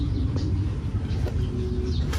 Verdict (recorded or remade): recorded